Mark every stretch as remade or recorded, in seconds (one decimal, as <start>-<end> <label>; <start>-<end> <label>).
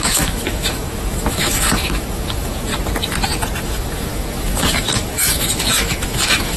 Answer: 0.0-2.7 remade; 2.7-3.6 recorded; 3.6-6.6 remade